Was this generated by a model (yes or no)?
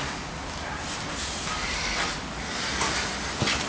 no